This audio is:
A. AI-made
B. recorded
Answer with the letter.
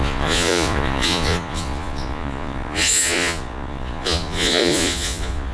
A